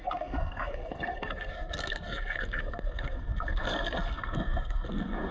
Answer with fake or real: fake